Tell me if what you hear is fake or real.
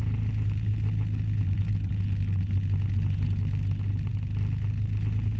real